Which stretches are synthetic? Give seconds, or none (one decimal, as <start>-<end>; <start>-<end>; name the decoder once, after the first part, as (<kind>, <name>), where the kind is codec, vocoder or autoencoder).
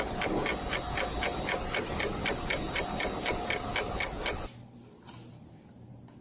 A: none